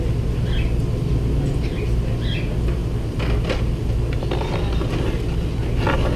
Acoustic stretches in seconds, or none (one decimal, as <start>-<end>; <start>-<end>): 0.0-6.2